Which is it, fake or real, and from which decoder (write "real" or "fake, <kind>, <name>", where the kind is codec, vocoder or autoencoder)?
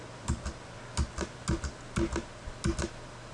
real